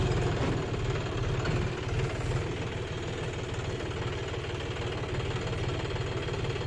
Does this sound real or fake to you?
real